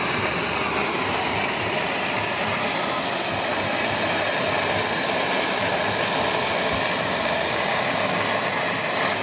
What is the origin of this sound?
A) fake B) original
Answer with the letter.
B